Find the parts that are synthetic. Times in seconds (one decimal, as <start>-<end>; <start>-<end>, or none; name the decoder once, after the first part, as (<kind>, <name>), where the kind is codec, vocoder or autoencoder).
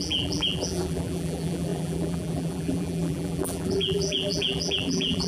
0.0-5.3 (vocoder, BigVGAN v2)